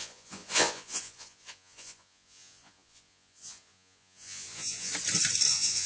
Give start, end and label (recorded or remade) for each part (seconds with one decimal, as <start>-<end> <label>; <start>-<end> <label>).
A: 0.0-4.9 remade; 4.9-5.5 recorded; 5.5-5.9 remade